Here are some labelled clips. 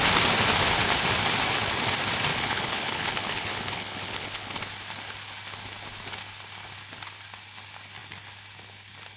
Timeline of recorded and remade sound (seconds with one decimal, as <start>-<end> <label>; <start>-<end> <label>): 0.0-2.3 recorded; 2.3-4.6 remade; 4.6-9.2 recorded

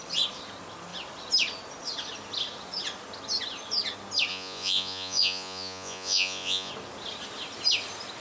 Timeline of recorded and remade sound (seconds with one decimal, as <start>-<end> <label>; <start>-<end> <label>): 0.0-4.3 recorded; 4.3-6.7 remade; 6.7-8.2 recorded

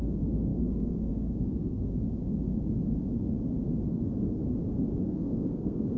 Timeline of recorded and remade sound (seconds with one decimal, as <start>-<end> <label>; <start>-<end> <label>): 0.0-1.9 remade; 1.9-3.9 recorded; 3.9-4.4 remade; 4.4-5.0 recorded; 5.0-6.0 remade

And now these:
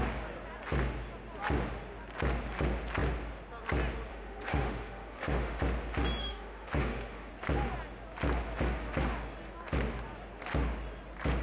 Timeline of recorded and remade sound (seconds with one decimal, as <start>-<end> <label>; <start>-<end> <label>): 0.0-4.1 recorded; 4.1-5.6 remade; 5.6-6.2 recorded; 6.2-7.3 remade; 7.3-11.4 recorded

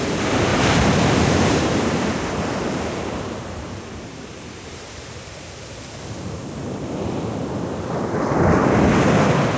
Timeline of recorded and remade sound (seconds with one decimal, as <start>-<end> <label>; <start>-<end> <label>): 0.0-0.5 recorded; 0.5-5.5 remade; 5.5-9.6 recorded